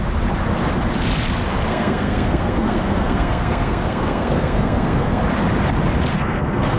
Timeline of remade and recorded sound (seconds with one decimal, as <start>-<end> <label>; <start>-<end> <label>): 0.0-1.7 recorded; 1.7-5.2 remade; 5.2-6.1 recorded; 6.1-6.8 remade